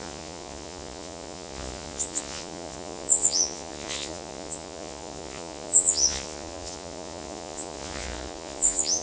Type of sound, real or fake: fake